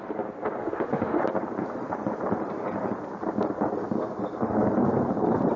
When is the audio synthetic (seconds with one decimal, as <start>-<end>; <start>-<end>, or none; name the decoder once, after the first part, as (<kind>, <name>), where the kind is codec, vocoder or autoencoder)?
0.6-1.2 (autoencoder, DAC-VAE)